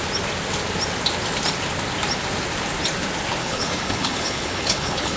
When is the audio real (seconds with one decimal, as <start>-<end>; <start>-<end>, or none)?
0.0-3.4